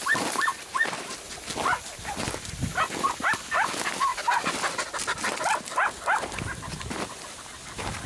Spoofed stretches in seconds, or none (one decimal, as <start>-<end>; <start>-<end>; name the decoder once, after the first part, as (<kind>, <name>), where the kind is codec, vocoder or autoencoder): none